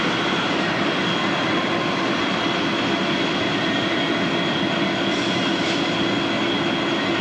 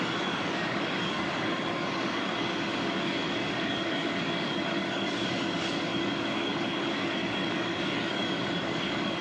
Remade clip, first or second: second